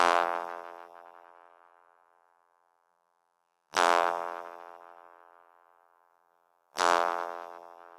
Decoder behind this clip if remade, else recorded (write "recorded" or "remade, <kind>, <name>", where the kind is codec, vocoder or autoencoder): remade, vocoder, BigVGAN v2